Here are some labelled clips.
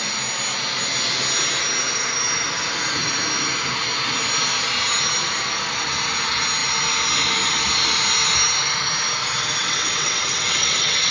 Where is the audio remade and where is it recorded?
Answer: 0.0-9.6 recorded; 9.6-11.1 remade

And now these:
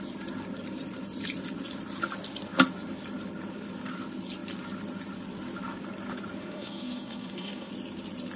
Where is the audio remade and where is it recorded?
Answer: 0.0-6.4 recorded; 6.4-7.7 remade; 7.7-8.4 recorded